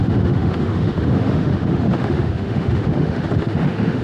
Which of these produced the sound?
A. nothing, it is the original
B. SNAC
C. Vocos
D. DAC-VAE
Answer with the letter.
D